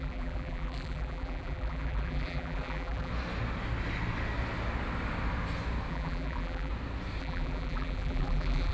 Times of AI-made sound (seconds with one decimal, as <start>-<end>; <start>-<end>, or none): 0.0-3.1; 5.9-6.7; 7.2-8.7